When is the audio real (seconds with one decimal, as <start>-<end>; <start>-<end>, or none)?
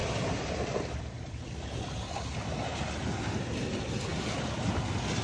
2.5-4.1; 4.8-5.2